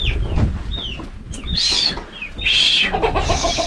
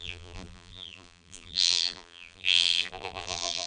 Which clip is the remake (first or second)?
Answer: second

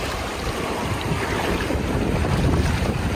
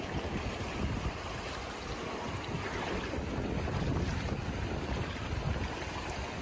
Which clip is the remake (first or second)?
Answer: first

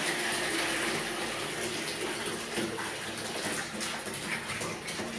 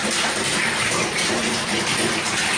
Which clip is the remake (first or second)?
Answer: second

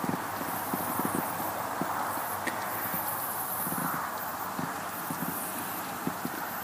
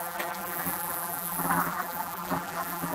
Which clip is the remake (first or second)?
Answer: second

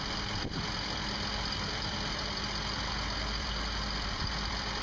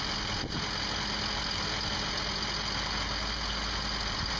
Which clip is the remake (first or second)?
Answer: first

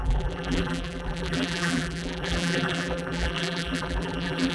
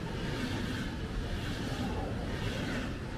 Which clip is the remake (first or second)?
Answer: first